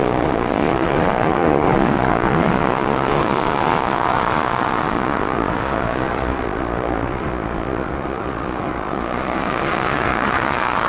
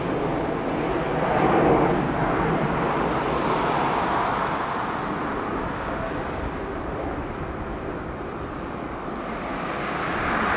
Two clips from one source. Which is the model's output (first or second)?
first